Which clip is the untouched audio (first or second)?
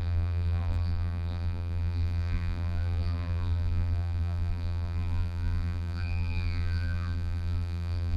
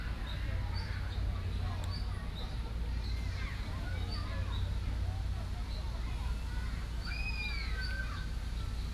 second